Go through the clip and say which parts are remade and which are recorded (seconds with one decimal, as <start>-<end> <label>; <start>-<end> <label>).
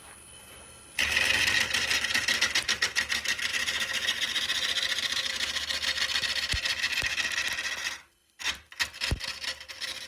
0.0-3.5 recorded; 3.5-5.3 remade; 5.3-8.2 recorded; 8.2-8.7 remade; 8.7-10.1 recorded